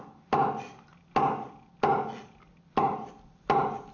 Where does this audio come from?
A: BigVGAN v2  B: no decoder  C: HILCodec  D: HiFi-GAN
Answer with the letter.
B